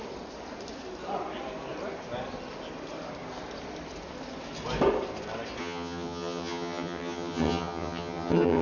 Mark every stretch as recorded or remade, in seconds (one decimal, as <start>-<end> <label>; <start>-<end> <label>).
0.0-5.6 recorded; 5.6-8.6 remade